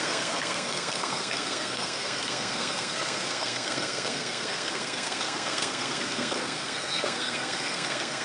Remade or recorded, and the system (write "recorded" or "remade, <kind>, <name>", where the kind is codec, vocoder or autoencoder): remade, codec, SNAC